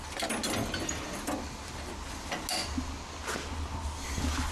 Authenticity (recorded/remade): recorded